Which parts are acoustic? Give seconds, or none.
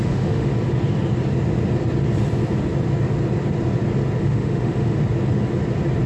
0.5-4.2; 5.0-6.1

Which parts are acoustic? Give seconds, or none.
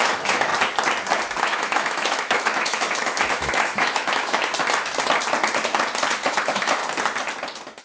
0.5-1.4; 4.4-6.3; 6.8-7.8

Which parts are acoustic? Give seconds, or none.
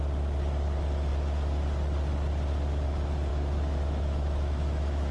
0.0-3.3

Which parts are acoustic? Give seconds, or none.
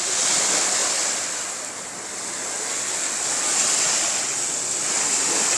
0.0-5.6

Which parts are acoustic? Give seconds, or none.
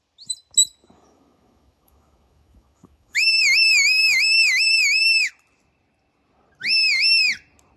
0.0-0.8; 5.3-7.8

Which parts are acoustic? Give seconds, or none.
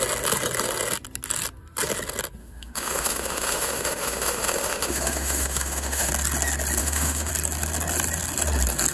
0.0-2.4; 6.1-6.8; 7.3-8.9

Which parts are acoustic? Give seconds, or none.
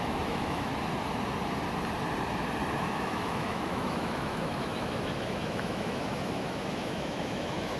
0.7-2.7